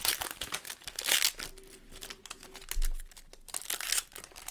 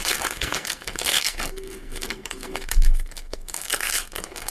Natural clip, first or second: first